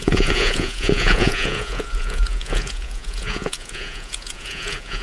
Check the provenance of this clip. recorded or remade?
remade